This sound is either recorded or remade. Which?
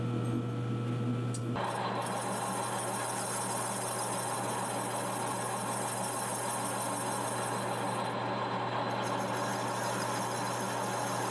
recorded